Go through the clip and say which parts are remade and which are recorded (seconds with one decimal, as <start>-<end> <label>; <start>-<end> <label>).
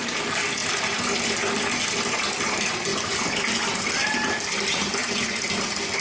0.0-6.0 recorded